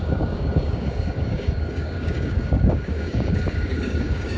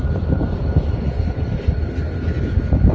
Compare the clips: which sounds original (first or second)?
second